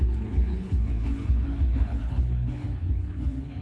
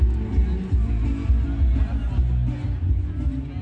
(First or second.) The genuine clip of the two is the second